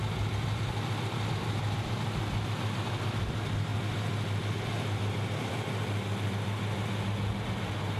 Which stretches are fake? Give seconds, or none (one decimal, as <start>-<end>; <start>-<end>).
none